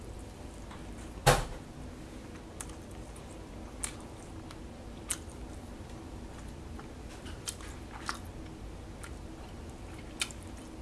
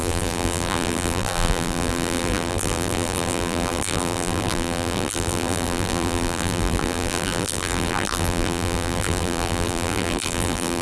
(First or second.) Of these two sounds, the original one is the first